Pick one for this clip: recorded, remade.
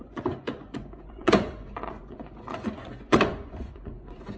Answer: remade